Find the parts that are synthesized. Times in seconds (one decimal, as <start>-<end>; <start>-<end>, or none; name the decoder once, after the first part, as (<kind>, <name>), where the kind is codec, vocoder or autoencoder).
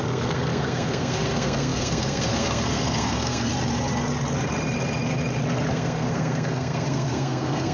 0.0-3.5 (codec, SNAC); 5.7-7.7